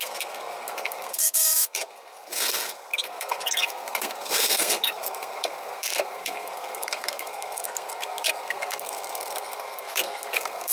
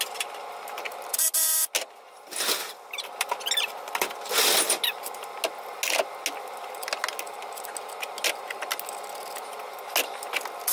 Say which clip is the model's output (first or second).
first